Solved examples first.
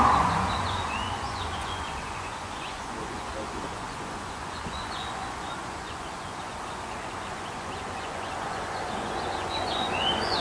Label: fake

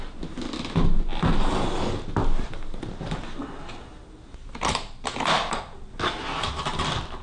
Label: real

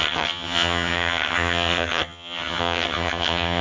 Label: fake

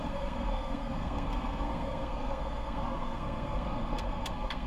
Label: fake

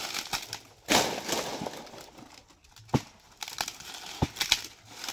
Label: real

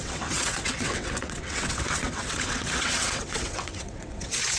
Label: fake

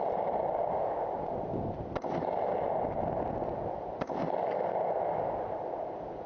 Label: real